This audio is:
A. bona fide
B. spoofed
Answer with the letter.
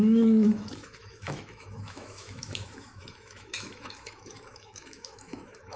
B